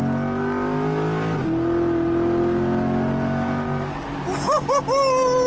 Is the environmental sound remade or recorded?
recorded